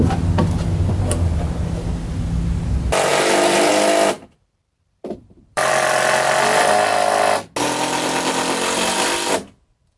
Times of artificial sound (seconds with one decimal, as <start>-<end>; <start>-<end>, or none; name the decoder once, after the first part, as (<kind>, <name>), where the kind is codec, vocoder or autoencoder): 3.1-3.7 (vocoder, BigVGAN v2); 4.2-5.7